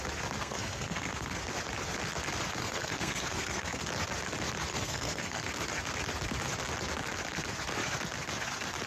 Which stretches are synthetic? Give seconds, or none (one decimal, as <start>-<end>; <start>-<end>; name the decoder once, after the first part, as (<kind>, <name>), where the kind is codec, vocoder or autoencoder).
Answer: 0.4-1.4 (codec, SNAC); 2.6-3.9; 4.7-5.5